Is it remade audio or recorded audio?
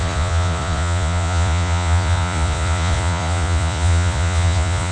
remade